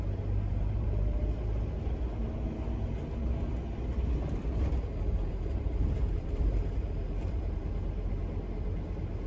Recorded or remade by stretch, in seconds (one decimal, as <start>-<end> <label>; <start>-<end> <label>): 0.0-0.5 recorded; 0.5-1.2 remade; 1.2-4.9 recorded; 4.9-7.7 remade; 7.7-9.3 recorded